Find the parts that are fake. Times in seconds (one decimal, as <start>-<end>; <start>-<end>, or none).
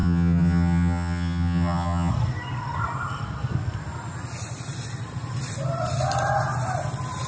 0.0-2.1